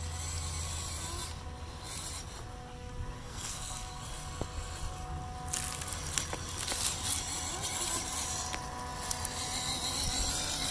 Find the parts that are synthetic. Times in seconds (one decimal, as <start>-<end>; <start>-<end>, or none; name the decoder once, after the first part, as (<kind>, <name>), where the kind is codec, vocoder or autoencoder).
3.2-4.0 (codec, SNAC)